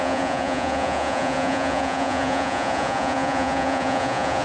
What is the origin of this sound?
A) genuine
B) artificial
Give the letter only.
B